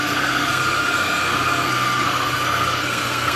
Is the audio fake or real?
fake